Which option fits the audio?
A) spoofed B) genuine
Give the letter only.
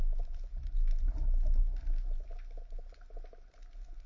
B